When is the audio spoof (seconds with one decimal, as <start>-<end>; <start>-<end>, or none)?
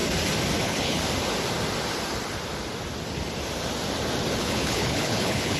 0.6-1.0; 4.4-5.6